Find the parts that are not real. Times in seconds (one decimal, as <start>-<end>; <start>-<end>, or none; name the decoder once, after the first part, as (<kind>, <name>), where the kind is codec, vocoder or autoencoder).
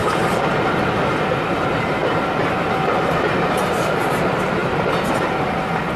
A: 0.0-0.6 (vocoder, BigVGAN v2)